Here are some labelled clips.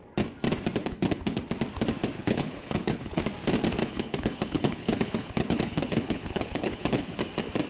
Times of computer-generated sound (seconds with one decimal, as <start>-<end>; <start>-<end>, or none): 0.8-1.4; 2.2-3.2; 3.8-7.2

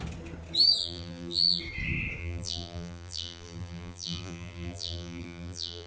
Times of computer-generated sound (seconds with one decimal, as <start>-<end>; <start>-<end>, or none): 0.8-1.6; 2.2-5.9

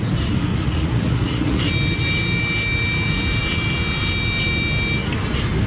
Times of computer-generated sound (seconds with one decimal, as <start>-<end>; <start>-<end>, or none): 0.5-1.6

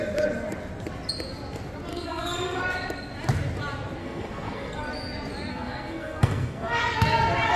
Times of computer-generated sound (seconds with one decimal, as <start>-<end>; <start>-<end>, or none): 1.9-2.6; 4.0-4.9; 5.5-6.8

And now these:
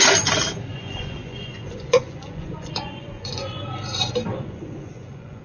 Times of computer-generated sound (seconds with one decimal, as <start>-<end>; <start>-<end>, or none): 0.7-3.6; 4.3-5.4

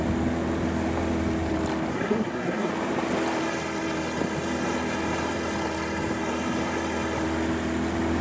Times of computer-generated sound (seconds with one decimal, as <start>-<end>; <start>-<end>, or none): 1.9-2.7